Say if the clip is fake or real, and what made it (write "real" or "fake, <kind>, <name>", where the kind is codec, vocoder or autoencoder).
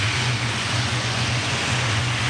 fake, vocoder, Vocos